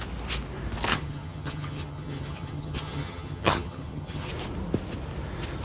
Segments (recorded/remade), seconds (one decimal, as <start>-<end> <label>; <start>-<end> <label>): 0.0-0.9 recorded; 0.9-4.3 remade; 4.3-5.6 recorded